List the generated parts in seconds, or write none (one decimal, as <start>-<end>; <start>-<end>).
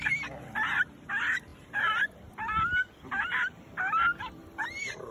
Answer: 1.5-4.6